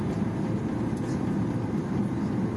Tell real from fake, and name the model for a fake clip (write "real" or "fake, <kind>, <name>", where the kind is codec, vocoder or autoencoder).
real